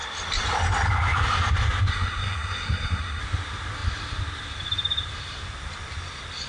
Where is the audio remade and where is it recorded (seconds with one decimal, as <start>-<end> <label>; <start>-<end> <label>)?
0.0-1.9 recorded; 1.9-3.2 remade; 3.2-6.5 recorded